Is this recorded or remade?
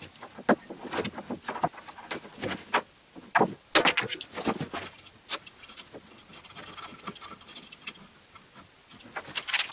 recorded